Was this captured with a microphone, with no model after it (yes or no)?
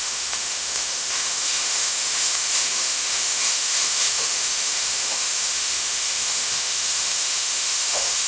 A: no